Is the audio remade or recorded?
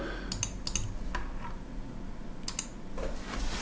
recorded